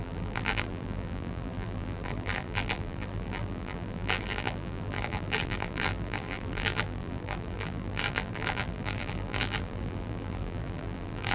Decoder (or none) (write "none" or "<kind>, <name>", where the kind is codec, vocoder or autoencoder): vocoder, BigVGAN v2